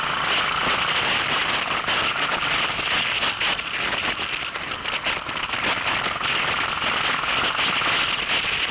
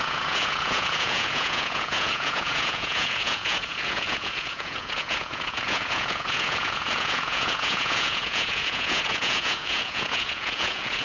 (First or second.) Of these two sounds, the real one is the first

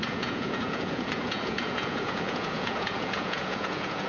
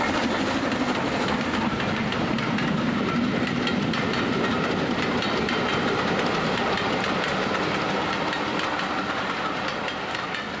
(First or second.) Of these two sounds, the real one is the second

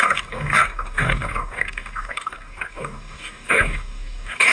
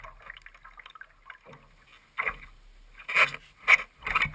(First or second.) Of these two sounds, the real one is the second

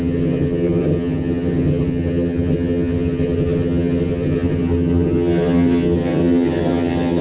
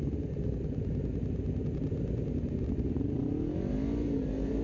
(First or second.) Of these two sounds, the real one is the second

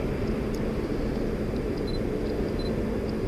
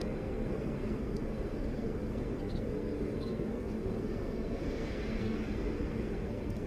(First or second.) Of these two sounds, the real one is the first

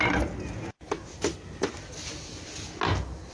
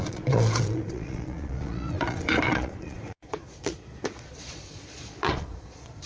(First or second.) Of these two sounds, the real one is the first